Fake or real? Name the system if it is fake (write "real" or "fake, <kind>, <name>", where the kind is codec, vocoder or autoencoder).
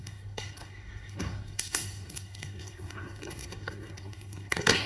fake, codec, SNAC